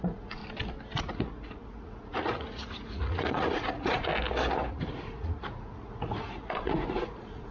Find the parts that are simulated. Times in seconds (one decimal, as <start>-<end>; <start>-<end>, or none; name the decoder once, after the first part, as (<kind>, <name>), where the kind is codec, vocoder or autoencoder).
0.0-0.4 (vocoder, Vocos); 1.0-4.1; 4.7-7.5